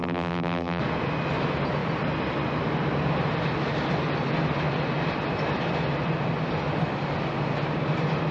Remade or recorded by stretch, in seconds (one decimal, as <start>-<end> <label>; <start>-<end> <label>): 0.0-0.8 remade; 0.8-8.3 recorded